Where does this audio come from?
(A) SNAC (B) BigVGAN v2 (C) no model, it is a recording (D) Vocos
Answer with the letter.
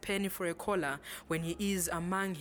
C